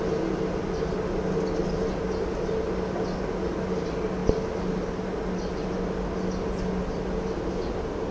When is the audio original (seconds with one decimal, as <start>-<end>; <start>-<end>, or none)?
0.0-8.1